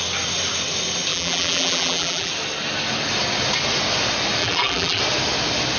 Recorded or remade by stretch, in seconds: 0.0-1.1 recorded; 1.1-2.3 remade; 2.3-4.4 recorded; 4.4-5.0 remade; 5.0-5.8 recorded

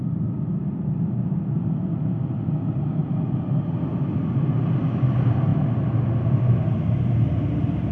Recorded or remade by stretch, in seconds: 0.0-7.9 recorded

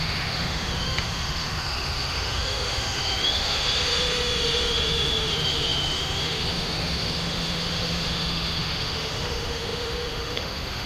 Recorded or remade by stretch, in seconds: 0.0-10.9 remade

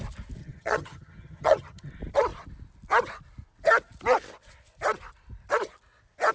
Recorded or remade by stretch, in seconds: 0.0-0.4 recorded; 0.4-1.9 remade; 1.9-6.3 recorded

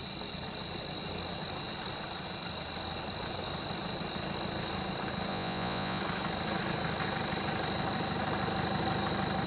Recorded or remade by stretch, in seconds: 0.0-5.3 recorded; 5.3-6.0 remade; 6.0-9.5 recorded

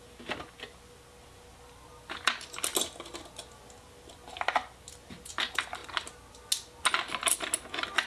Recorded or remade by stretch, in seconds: 0.0-8.1 recorded

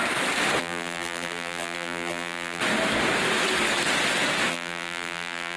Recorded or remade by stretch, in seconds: 0.0-0.6 recorded; 0.6-2.6 remade; 2.6-4.5 recorded; 4.5-5.6 remade

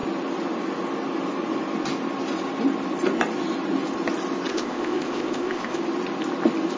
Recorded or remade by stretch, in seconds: 0.0-4.5 recorded; 4.5-5.8 remade; 5.8-6.8 recorded